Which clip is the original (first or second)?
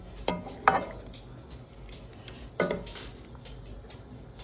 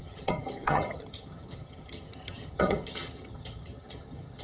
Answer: first